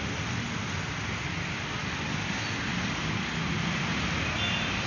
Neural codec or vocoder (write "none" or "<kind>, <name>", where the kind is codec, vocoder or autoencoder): none